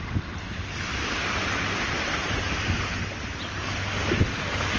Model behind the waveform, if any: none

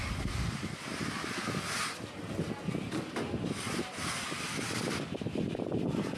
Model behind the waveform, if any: none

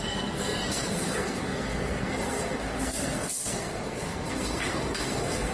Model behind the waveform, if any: codec, SNAC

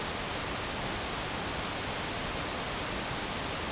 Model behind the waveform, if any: none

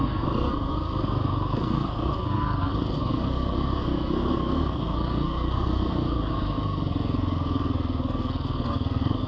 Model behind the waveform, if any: codec, SNAC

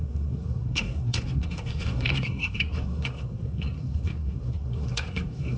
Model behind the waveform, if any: codec, SNAC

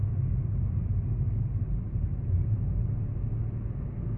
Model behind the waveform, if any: none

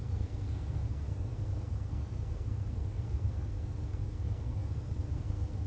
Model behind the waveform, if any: codec, SNAC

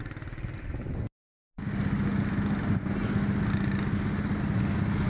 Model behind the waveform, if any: none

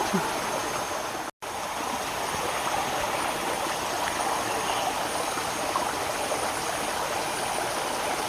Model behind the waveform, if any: none